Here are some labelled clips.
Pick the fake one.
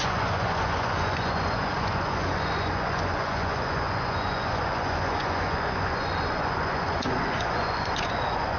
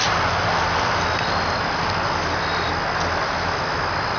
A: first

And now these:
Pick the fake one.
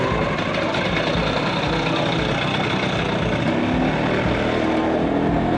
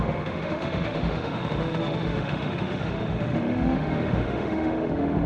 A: second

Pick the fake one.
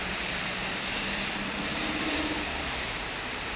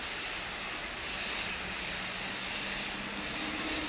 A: first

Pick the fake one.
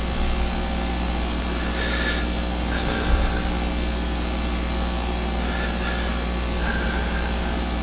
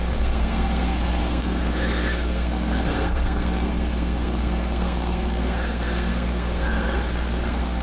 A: second